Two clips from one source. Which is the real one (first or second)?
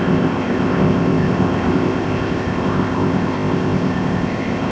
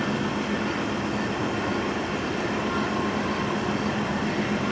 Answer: second